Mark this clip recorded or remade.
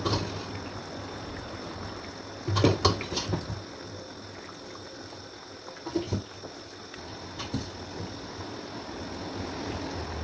recorded